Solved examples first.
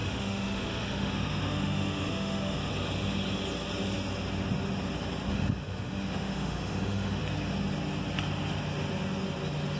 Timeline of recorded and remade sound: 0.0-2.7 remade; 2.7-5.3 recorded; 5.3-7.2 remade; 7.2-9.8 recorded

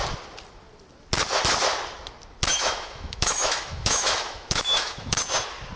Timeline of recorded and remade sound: 0.0-2.5 recorded; 2.5-5.2 remade; 5.2-5.8 recorded

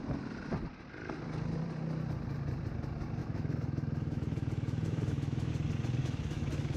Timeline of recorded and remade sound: 0.0-3.2 recorded; 3.2-5.5 remade; 5.5-6.0 recorded; 6.0-6.8 remade

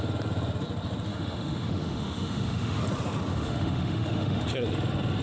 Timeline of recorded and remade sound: 0.0-1.1 recorded; 1.1-2.8 remade; 2.8-3.3 recorded; 3.3-4.5 remade; 4.5-5.2 recorded